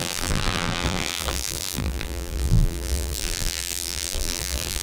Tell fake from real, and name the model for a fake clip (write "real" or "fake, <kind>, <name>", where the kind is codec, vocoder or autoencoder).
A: fake, vocoder, BigVGAN v2